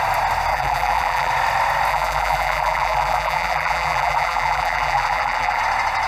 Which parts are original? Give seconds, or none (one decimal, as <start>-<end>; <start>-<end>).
0.0-0.5; 1.3-1.9; 5.6-6.1